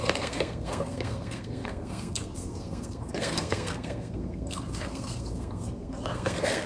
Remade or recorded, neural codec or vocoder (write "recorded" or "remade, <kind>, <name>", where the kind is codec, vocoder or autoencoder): remade, codec, SNAC